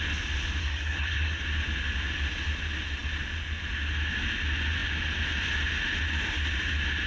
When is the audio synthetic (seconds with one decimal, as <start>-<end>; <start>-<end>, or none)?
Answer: 0.6-1.4